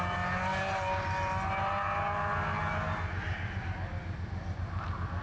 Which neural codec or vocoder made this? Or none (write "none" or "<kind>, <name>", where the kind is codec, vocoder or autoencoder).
none